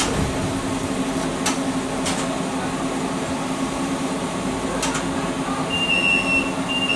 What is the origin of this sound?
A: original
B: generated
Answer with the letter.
A